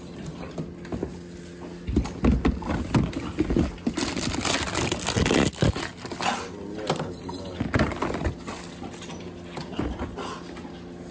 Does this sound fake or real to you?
real